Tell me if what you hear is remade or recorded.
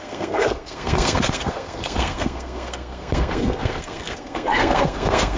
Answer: remade